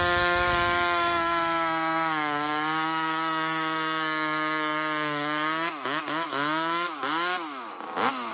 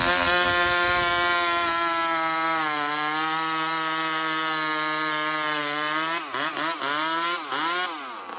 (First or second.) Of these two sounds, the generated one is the first